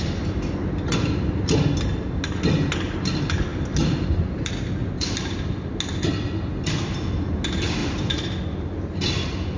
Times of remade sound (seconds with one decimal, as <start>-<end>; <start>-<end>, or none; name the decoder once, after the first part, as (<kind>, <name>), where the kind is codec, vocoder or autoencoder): 3.5-4.5 (vocoder, BigVGAN v2); 7.8-8.4